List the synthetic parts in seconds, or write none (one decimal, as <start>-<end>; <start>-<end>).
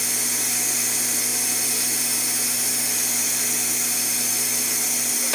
none